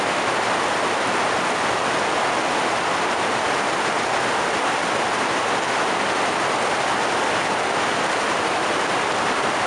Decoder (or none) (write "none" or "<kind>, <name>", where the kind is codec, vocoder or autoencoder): none